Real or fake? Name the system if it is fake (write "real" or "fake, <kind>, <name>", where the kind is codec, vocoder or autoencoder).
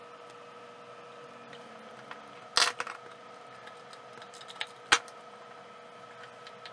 real